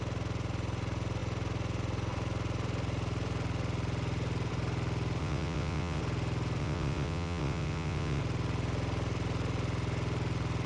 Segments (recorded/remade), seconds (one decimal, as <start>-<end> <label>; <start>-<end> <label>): 0.0-5.2 recorded; 5.2-6.0 remade; 6.0-6.6 recorded; 6.6-8.2 remade; 8.2-10.7 recorded